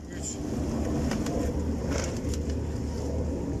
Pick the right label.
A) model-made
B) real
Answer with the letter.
B